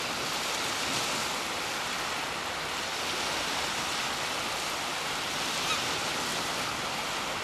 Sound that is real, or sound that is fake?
real